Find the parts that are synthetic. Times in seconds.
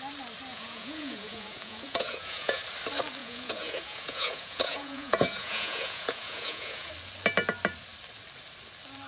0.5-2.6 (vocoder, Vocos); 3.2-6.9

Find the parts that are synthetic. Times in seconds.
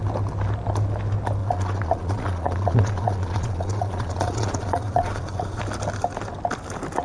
1.4-5.6 (vocoder, Vocos)